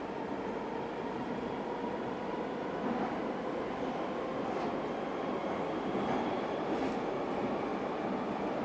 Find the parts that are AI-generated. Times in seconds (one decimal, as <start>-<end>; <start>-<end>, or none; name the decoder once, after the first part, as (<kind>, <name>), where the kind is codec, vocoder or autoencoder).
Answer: none